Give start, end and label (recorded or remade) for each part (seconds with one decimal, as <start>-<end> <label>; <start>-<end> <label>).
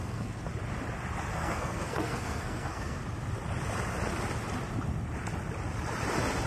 0.0-0.4 remade; 0.4-1.3 recorded; 1.3-3.0 remade; 3.0-6.5 recorded